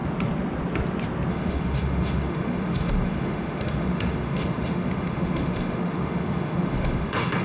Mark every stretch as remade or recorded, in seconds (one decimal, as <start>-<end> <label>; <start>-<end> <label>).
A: 0.0-1.3 recorded; 1.3-7.4 remade